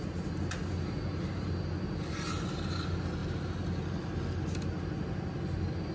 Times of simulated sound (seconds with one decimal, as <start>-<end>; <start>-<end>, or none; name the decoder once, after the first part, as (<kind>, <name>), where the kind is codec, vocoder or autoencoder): none